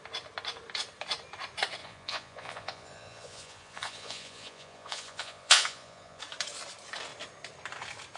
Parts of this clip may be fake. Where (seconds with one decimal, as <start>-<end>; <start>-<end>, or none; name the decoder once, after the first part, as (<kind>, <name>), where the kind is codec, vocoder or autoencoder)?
1.8-6.2 (vocoder, Vocos)